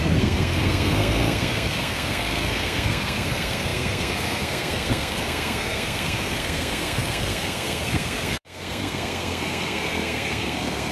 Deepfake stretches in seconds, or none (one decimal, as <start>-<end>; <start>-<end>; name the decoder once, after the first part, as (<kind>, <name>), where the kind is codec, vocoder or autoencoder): 0.0-10.9 (codec, SNAC)